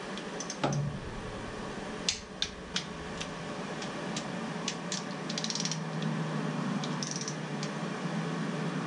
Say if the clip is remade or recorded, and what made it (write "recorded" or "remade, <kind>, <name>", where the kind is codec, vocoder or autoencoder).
recorded